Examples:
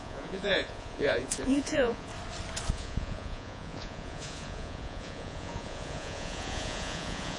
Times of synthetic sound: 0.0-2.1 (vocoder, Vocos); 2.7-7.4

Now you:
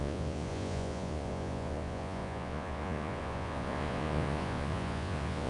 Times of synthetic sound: 0.0-5.5 (vocoder, Vocos)

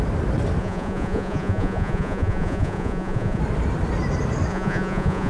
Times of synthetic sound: 0.6-3.4 (vocoder, Vocos); 4.5-5.3

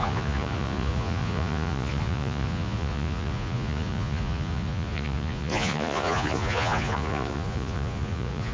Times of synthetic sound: 0.0-8.5 (vocoder, Vocos)

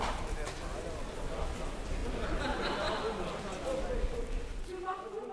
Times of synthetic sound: none

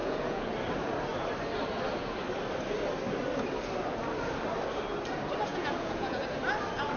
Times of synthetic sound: 0.0-0.5 (vocoder, Vocos); 5.5-6.2